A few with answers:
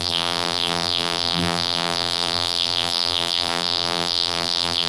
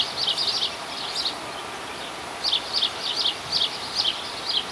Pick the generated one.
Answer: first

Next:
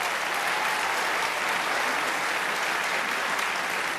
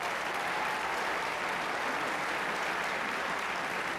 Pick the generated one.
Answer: second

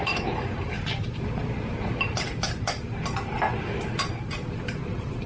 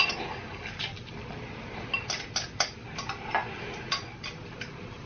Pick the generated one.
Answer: first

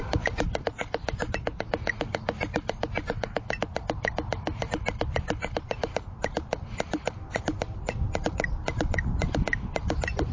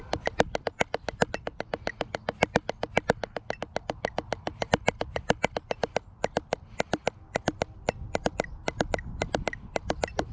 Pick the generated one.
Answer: first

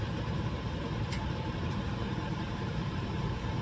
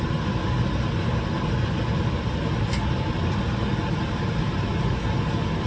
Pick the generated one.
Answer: first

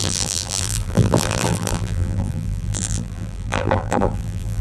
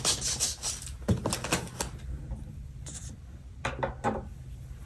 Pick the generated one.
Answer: first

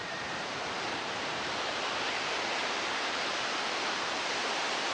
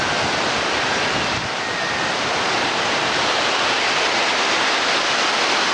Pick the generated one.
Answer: first